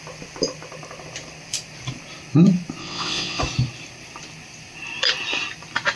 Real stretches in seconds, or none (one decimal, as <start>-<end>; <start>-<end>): 0.0-2.8; 3.4-6.0